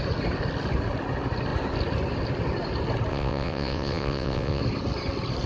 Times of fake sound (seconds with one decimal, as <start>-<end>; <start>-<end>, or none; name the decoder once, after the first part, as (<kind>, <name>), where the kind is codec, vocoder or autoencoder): 3.1-4.6 (vocoder, WaveNeXt)